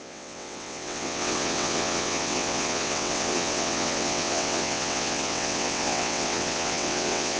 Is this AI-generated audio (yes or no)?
yes